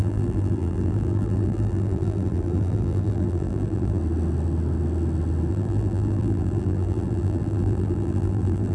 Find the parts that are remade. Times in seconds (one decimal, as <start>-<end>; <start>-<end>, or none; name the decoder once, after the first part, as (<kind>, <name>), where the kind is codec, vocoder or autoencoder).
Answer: 0.0-4.0 (vocoder, BigVGAN v2); 5.5-8.7